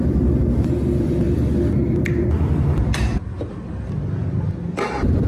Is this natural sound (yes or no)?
no